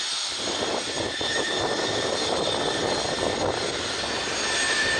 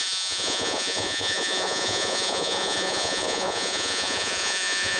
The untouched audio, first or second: first